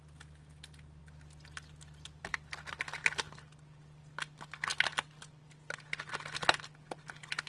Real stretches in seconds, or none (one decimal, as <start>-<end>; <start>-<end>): 0.0-7.5